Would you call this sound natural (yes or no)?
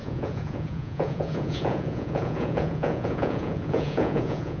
no